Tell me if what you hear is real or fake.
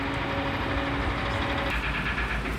real